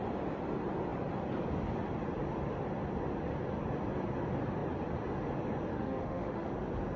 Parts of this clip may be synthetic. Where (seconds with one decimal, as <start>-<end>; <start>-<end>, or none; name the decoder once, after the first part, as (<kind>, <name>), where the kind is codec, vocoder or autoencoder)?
5.7-6.5 (autoencoder, DAC-VAE)